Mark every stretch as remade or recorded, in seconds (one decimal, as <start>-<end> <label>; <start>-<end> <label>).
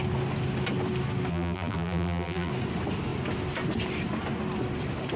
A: 0.0-1.3 recorded; 1.3-2.5 remade; 2.5-5.2 recorded